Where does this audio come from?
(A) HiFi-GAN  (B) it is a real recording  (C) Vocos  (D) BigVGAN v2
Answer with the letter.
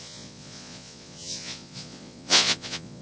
C